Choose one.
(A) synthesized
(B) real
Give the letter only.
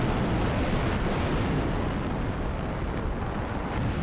B